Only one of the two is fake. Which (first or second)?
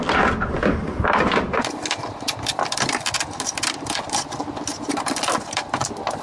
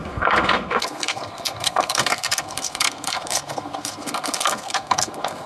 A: second